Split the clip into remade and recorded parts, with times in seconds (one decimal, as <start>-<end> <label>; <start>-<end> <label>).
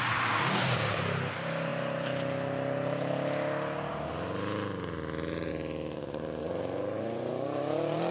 0.0-6.4 recorded; 6.4-7.3 remade; 7.3-8.1 recorded